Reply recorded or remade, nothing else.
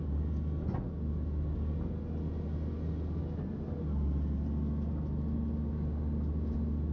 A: recorded